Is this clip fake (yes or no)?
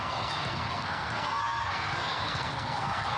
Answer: yes